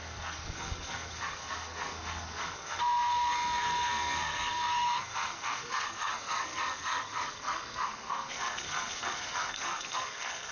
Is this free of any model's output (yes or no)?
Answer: no